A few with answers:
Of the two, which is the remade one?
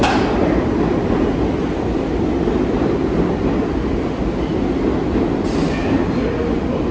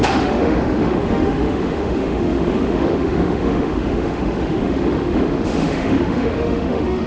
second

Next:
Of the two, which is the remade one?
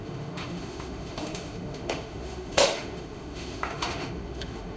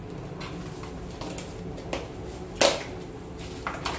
first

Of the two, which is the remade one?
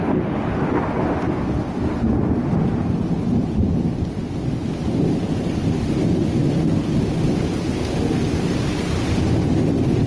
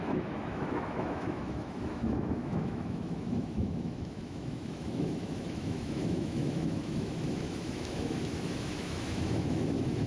second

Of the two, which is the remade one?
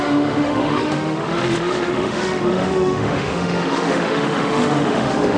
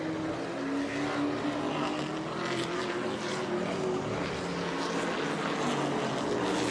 first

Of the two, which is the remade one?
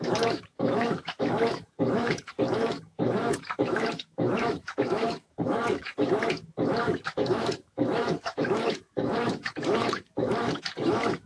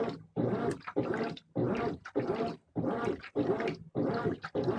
first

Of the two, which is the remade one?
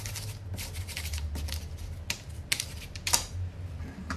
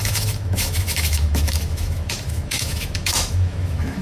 second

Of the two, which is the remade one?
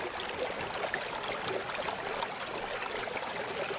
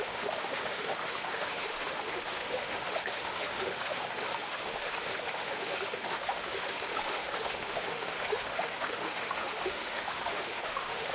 second